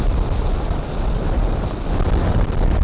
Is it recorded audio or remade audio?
recorded